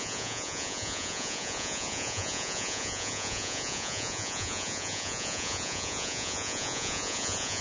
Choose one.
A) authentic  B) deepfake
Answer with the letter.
B